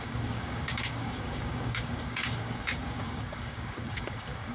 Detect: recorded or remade remade